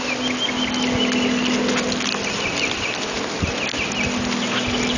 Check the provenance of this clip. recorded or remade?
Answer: recorded